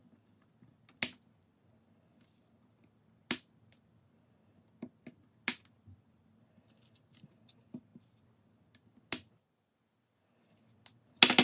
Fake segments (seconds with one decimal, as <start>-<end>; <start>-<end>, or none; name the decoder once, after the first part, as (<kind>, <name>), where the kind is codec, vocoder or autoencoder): none